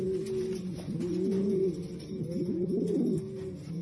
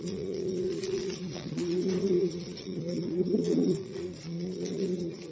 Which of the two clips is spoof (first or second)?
second